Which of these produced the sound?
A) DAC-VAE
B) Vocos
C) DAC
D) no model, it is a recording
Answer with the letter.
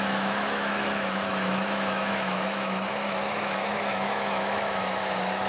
A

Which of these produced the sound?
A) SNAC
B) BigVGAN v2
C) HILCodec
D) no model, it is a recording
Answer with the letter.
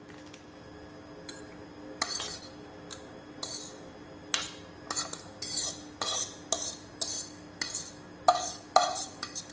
D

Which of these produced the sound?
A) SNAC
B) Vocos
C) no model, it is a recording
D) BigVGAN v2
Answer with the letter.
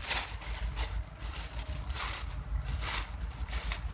C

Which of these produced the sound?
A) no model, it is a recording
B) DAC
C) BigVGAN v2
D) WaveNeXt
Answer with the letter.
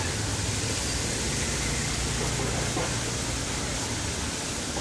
A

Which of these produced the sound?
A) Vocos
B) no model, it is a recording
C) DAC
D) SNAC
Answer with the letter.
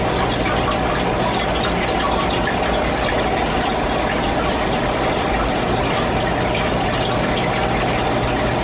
B